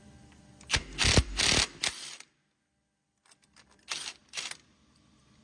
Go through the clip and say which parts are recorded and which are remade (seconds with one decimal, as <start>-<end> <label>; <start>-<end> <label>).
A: 0.0-5.4 recorded